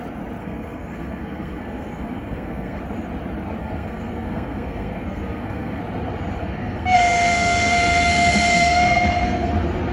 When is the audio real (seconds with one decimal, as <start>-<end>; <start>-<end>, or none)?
0.0-0.4; 2.8-3.6; 5.8-6.4; 9.5-9.9